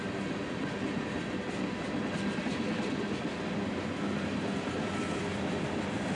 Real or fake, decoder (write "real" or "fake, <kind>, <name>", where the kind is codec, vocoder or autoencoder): real